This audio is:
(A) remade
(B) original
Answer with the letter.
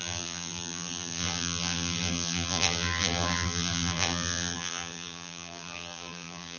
A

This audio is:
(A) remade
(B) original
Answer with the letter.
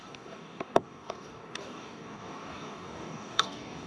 A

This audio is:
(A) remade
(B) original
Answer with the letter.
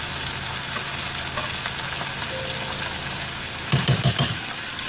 B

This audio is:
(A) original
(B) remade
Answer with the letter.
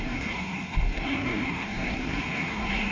B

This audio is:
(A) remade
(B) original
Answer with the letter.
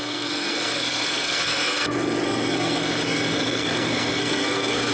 A